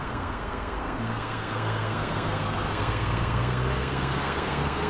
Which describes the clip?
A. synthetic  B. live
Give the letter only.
A